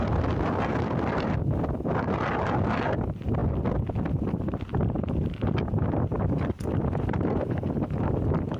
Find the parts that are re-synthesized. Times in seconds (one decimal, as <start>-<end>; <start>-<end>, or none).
none

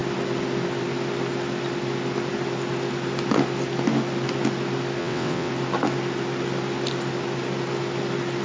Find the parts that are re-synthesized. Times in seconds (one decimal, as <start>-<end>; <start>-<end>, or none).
5.0-5.5

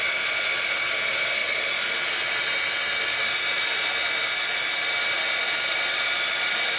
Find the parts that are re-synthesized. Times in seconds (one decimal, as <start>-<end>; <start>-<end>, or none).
none